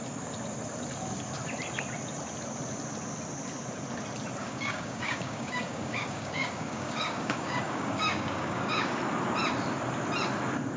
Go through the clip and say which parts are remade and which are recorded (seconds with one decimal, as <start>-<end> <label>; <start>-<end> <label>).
0.0-4.4 recorded; 4.4-9.0 remade; 9.0-10.8 recorded